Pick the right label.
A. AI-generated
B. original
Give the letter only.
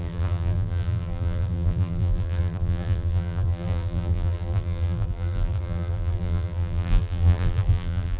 A